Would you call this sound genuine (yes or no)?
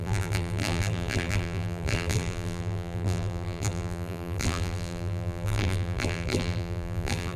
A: no